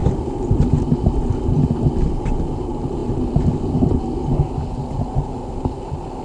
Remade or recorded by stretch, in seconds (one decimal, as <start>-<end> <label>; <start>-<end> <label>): 0.0-1.1 remade; 1.1-6.2 recorded